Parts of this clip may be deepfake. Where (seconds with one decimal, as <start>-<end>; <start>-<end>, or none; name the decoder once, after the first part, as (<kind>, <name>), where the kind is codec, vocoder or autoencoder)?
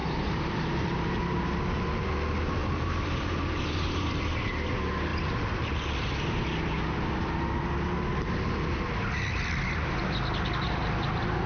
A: 0.0-1.5 (vocoder, BigVGAN v2); 2.6-4.0